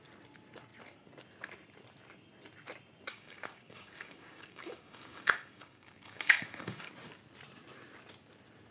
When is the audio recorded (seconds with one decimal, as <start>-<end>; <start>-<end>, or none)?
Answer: 0.0-3.1; 6.9-8.7